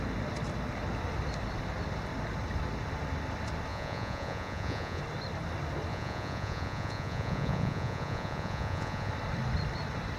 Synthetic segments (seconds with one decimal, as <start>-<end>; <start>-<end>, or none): 3.7-5.0; 5.9-9.1